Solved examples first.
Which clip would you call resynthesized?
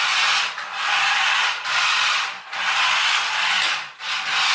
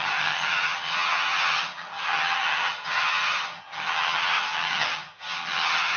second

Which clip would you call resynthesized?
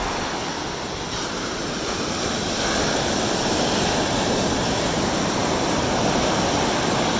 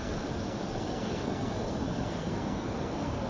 second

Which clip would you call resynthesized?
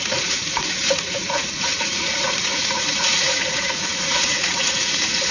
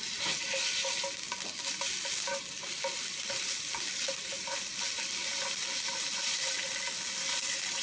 first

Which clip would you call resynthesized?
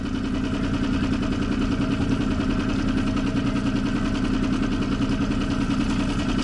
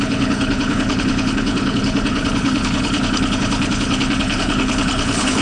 second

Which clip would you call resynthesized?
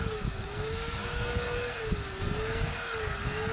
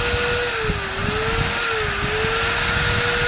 first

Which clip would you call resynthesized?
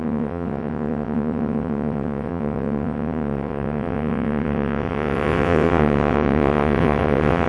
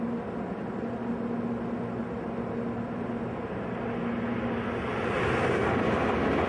first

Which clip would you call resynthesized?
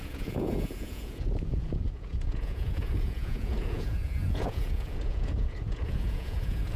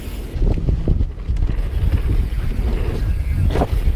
first